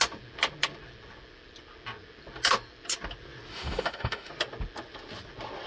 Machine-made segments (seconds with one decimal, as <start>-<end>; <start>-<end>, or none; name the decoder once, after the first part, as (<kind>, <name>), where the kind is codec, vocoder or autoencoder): 3.5-4.3 (autoencoder, DAC-VAE)